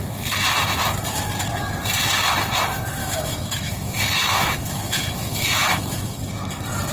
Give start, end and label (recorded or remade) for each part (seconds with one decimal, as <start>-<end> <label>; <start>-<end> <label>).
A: 0.0-3.0 recorded; 3.0-6.3 remade; 6.3-6.9 recorded